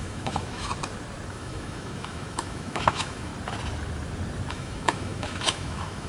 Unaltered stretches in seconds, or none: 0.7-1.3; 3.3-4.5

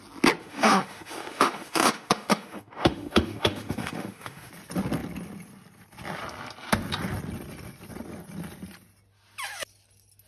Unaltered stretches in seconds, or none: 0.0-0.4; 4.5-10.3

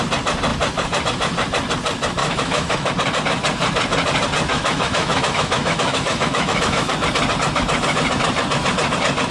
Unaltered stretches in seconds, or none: 0.0-2.2; 2.9-4.5; 6.9-9.3